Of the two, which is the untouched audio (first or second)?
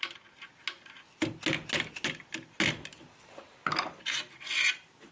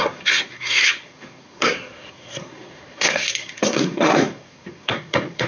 first